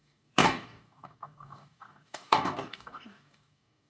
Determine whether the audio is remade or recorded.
remade